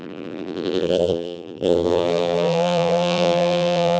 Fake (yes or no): yes